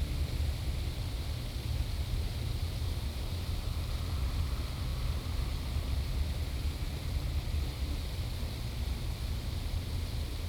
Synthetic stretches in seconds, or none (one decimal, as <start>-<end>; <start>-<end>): none